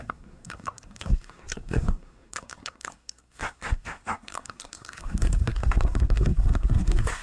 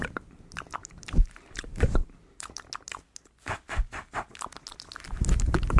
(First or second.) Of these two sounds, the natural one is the second